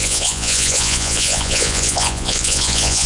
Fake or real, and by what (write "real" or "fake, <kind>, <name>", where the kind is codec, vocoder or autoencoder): fake, vocoder, Vocos